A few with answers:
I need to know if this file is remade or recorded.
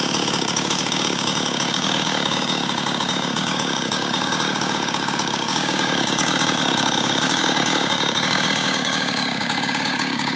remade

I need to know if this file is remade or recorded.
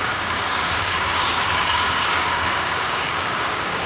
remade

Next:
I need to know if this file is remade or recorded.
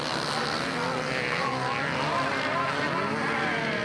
recorded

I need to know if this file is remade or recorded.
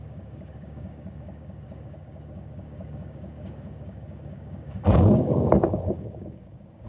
remade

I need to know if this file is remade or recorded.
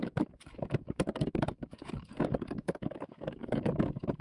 remade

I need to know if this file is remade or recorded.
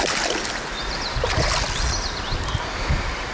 recorded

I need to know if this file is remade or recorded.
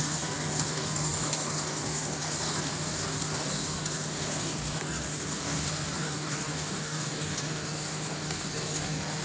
remade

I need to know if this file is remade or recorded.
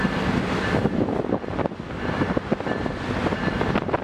recorded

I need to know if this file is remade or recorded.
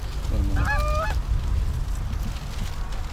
recorded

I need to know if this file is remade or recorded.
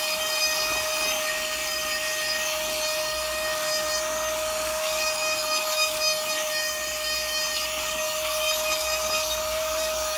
remade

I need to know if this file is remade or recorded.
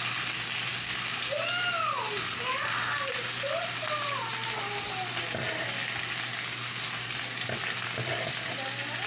recorded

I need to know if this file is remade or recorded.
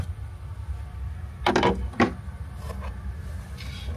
recorded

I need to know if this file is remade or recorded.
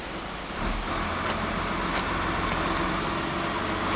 recorded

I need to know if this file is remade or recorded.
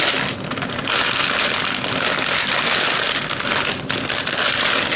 recorded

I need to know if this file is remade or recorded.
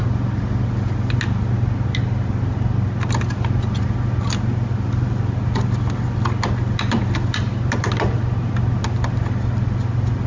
recorded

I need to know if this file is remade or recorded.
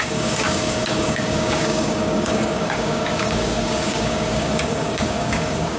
remade